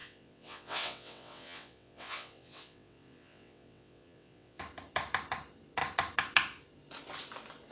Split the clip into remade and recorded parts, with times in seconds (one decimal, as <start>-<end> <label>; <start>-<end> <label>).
0.0-4.6 remade; 4.6-7.7 recorded